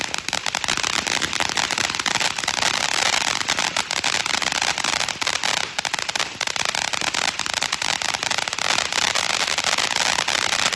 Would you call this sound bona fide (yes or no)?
yes